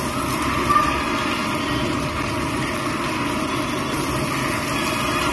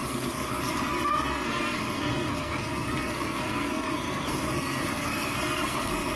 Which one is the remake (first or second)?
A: second